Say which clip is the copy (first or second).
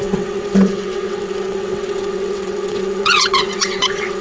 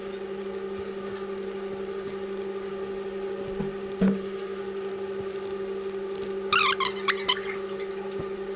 first